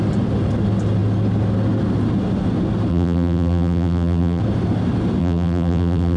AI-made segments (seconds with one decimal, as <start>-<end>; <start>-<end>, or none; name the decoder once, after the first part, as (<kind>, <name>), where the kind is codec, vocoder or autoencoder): 2.9-4.4 (vocoder, BigVGAN v2); 5.2-6.2